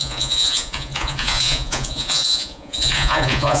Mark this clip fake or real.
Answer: fake